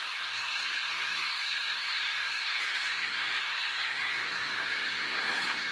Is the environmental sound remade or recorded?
remade